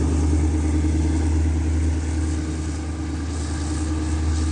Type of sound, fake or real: real